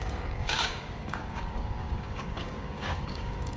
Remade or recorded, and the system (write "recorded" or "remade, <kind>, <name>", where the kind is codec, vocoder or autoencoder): remade, codec, DAC